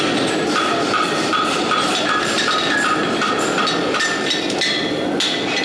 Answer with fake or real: real